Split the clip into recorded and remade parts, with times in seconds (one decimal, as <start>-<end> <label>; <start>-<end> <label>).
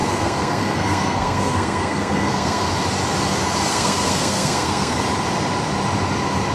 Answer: 0.0-2.7 remade; 2.7-3.7 recorded; 3.7-5.0 remade; 5.0-6.5 recorded